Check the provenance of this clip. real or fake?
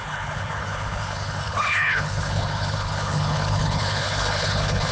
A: fake